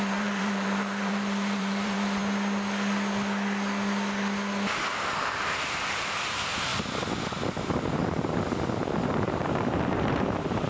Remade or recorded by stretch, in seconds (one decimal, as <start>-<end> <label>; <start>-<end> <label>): 0.0-2.2 remade; 2.2-4.9 recorded; 4.9-6.7 remade; 6.7-7.6 recorded; 7.6-8.0 remade; 8.0-8.7 recorded; 8.7-10.7 remade